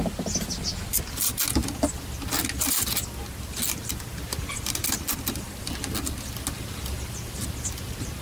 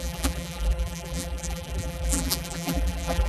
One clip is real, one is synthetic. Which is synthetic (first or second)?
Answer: second